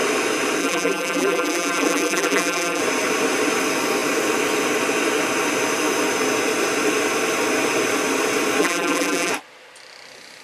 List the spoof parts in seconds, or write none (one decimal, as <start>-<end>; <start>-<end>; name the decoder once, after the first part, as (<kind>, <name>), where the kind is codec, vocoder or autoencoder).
0.6-2.8 (vocoder, BigVGAN v2); 8.6-9.3